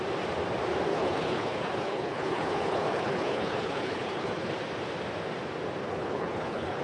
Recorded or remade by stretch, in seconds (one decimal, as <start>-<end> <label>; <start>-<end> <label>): 0.0-0.9 recorded; 0.9-4.5 remade; 4.5-5.8 recorded; 5.8-6.8 remade